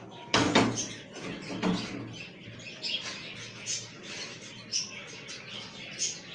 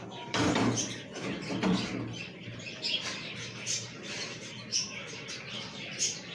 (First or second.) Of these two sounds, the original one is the first